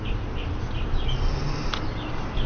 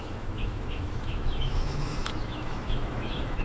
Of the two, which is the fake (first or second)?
second